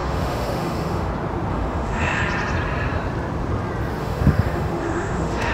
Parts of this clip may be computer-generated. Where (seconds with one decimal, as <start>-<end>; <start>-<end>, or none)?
0.0-1.1; 1.5-2.2; 4.0-5.5